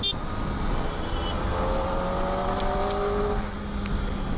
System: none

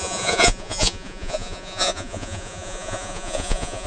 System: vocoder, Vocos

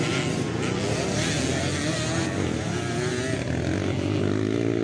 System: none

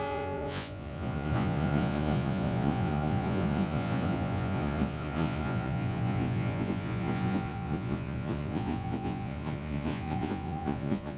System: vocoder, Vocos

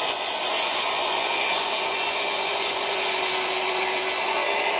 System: vocoder, Vocos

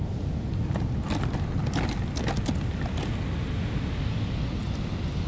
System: none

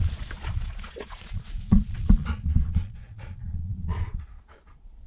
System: vocoder, Vocos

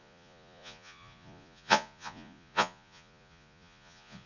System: vocoder, Vocos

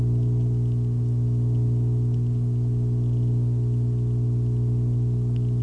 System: none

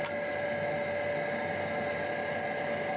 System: none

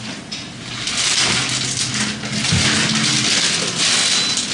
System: none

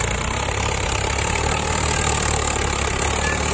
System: none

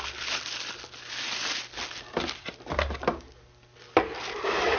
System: none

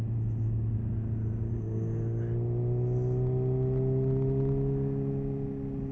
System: none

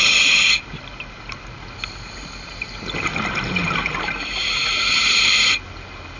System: none